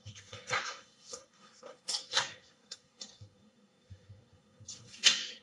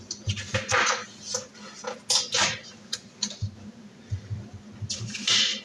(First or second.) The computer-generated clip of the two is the first